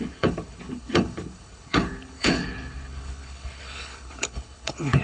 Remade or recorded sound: remade